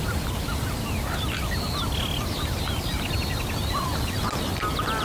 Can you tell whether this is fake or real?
real